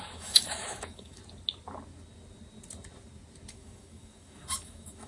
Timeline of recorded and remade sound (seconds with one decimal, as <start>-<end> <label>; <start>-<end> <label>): 0.0-1.2 remade; 1.2-3.5 recorded; 3.5-5.1 remade